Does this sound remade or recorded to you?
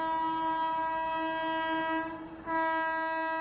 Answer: recorded